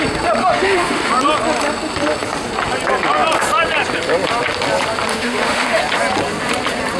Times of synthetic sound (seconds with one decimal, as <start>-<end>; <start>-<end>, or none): 0.4-1.1; 5.1-5.8